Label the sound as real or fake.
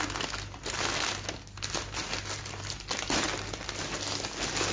real